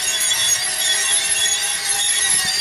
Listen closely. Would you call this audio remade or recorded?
recorded